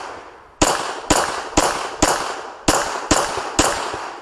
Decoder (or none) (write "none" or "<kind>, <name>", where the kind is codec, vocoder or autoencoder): none